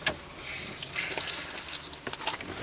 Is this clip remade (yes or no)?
no